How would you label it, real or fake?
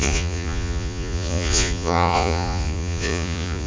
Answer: fake